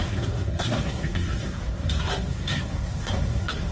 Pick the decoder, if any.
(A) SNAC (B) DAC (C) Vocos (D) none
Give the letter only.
A